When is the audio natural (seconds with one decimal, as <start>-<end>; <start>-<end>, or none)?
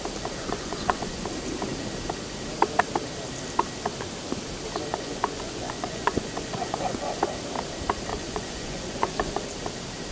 0.0-0.4; 1.2-4.9; 7.2-8.1; 9.4-10.1